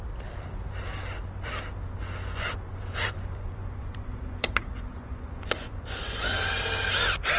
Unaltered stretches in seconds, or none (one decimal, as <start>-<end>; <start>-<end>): 0.0-2.2; 6.6-7.4